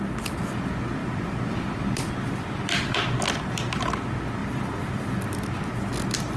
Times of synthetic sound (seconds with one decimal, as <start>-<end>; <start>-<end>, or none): 4.4-5.1